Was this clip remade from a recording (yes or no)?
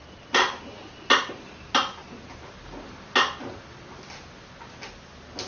no